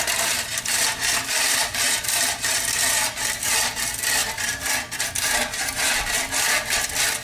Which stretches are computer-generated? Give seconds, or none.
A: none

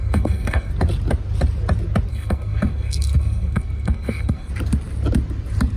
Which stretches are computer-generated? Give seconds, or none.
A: 0.0-0.7; 2.1-4.5

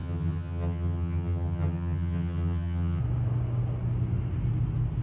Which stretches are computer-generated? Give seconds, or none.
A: 0.0-3.0